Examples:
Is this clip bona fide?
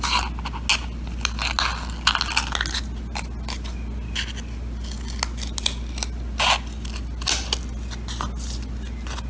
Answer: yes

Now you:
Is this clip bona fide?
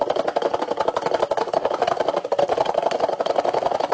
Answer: yes